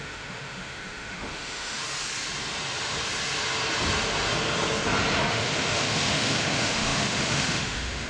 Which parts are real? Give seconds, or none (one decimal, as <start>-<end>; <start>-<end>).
1.8-5.3